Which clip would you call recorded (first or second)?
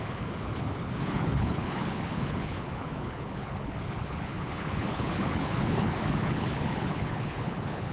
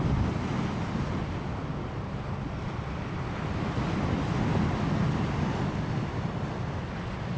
second